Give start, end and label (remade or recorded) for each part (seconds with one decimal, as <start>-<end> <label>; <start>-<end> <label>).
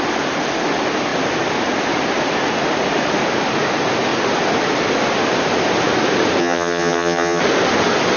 0.0-6.4 recorded; 6.4-7.4 remade; 7.4-8.2 recorded